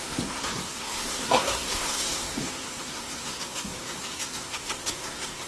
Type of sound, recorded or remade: remade